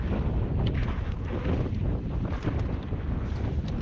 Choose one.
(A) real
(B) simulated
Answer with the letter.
A